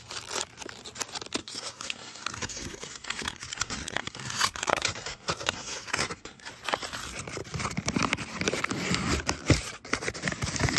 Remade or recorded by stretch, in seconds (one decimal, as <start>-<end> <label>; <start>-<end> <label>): 0.0-1.4 recorded; 1.4-6.5 remade; 6.5-10.8 recorded